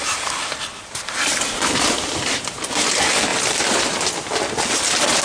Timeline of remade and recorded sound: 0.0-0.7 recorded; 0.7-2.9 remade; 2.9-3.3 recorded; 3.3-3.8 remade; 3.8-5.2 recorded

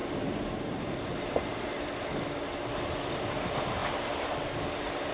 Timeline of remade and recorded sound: 0.0-5.1 recorded